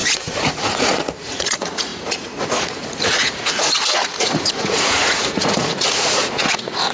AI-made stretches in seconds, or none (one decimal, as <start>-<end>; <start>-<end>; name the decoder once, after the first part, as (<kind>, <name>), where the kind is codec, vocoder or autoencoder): 0.0-6.9 (vocoder, Vocos)